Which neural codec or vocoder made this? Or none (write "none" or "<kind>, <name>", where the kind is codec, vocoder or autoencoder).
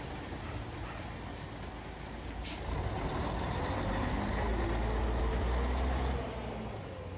none